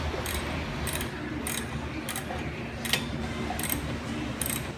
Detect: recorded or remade recorded